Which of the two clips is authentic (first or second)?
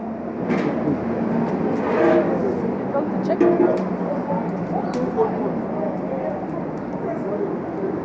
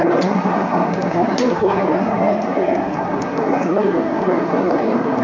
first